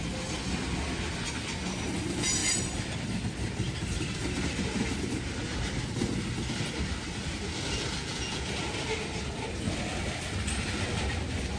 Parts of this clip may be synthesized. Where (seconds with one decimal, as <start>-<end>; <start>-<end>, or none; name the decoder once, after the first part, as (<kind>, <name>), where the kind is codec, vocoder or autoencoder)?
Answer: 8.0-8.5 (vocoder, Vocos)